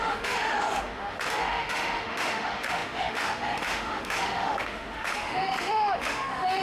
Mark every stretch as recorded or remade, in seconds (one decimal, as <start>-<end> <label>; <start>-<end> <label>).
0.0-6.6 remade